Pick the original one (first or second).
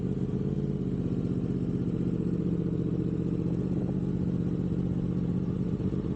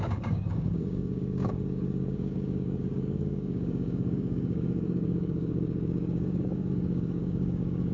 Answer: first